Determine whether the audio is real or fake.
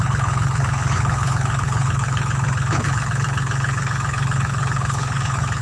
fake